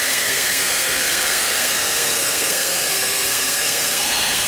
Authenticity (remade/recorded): remade